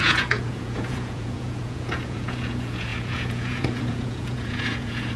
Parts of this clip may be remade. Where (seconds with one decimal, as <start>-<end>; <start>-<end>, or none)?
0.0-5.2